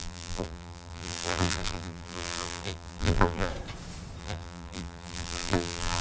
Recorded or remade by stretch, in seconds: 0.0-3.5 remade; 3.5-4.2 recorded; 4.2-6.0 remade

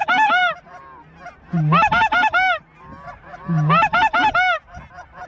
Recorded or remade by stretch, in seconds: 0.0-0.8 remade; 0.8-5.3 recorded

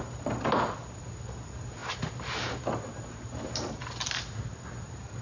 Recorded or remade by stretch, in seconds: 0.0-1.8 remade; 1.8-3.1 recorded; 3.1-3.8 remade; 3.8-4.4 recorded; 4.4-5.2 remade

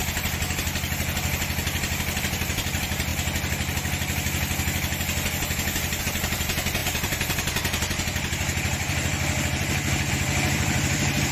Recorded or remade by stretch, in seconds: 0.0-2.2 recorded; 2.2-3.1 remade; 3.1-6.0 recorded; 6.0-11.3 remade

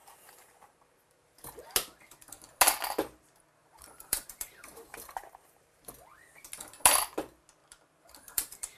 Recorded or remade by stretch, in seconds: 0.0-1.6 remade; 1.6-3.6 recorded; 3.6-5.9 remade; 5.9-7.6 recorded; 7.6-8.8 remade

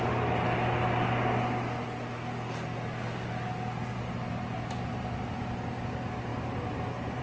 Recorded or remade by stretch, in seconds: 0.0-7.2 recorded

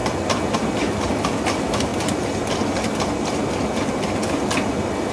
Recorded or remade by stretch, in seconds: 0.0-1.9 remade; 1.9-5.1 recorded